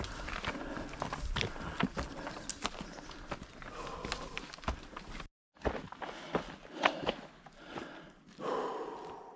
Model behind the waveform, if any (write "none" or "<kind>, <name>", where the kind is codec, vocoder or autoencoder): none